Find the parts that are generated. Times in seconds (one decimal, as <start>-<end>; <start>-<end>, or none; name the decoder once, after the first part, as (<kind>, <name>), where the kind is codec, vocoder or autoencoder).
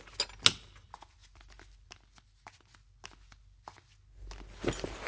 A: none